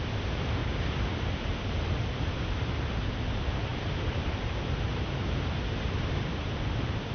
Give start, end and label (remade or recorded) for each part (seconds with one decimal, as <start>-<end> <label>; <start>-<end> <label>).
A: 0.0-0.6 remade; 0.6-1.2 recorded; 1.2-3.7 remade; 3.7-4.4 recorded; 4.4-7.1 remade